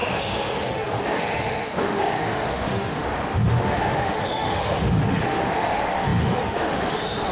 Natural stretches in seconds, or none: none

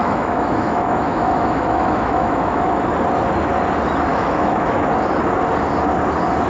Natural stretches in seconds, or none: 2.7-4.1; 4.9-6.5

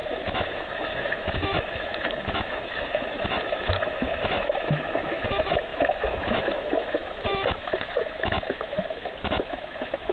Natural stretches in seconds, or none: none

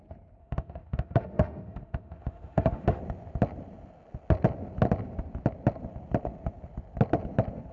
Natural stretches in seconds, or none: 0.0-0.4; 3.0-7.7

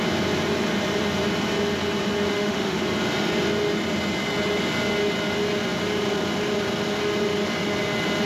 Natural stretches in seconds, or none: 0.0-2.3; 2.8-8.3